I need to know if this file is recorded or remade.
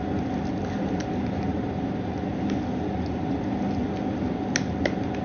recorded